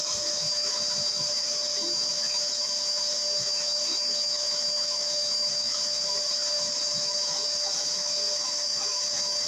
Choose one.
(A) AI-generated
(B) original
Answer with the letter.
A